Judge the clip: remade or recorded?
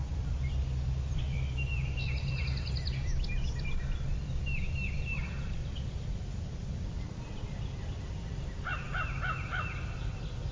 remade